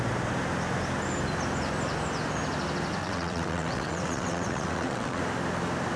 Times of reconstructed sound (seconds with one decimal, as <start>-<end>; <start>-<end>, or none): 3.0-5.2